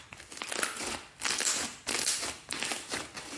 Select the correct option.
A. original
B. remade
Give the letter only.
A